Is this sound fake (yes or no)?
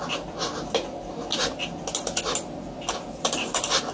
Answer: no